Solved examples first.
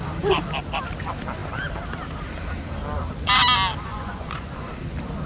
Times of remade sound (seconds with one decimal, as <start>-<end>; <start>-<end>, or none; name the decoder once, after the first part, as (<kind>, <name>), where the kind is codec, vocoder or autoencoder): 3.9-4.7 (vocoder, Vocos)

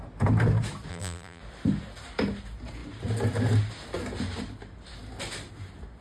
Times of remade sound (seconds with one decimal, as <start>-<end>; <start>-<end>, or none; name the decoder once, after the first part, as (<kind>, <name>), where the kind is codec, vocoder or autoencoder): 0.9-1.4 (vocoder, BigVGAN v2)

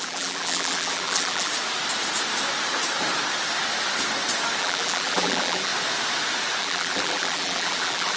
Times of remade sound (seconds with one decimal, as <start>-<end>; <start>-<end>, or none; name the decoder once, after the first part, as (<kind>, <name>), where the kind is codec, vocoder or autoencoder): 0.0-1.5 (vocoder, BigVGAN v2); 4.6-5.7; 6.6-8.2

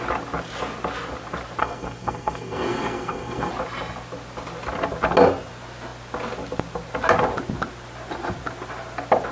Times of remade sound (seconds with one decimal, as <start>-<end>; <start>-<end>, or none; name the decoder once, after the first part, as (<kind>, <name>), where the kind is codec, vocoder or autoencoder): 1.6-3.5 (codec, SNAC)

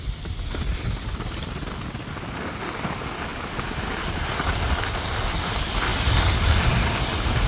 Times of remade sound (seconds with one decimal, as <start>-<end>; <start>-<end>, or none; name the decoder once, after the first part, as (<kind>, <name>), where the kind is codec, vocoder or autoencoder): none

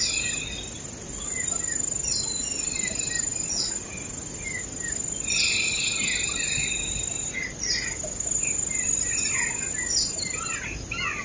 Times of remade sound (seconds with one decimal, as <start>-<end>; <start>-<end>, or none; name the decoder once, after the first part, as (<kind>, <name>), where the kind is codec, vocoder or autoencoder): none

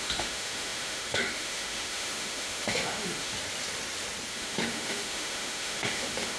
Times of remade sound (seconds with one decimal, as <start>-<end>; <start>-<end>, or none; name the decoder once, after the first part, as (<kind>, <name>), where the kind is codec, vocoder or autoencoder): 0.0-3.3 (autoencoder, DAC-VAE); 4.3-6.4